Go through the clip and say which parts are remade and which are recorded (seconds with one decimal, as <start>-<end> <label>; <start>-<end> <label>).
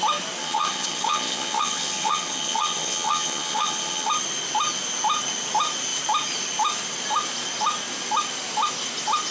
0.0-0.4 recorded; 0.4-4.1 remade; 4.1-9.3 recorded